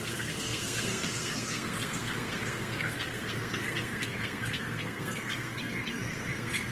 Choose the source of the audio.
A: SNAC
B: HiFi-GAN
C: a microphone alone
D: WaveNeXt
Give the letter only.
A